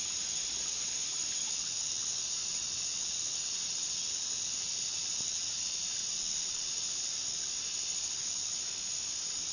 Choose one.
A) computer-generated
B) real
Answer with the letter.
B